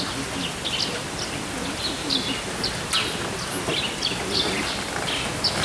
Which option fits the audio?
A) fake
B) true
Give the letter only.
B